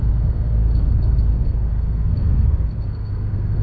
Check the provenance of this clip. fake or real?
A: fake